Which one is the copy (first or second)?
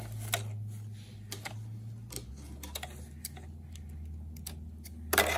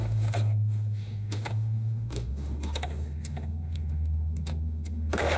second